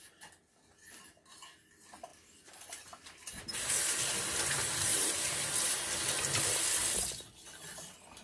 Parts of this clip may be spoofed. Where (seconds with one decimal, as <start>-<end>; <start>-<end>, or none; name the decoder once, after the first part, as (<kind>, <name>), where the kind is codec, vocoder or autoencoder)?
4.9-5.8 (vocoder, BigVGAN v2)